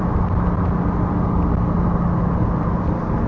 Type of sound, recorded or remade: recorded